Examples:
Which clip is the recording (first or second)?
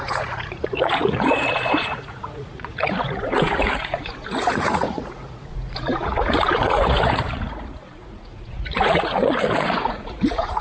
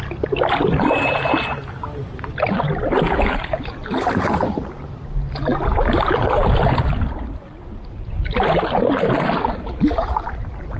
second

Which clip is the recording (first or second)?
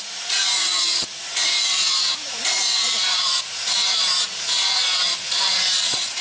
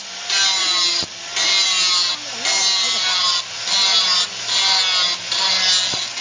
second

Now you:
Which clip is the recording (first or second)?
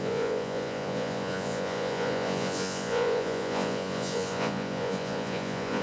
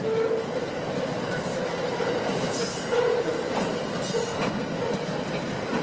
second